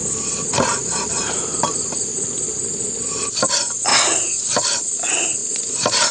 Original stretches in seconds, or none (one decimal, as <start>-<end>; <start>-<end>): 0.0-3.9; 4.4-6.1